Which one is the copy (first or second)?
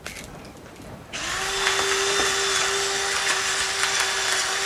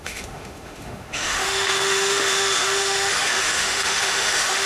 second